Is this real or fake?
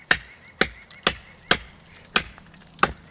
real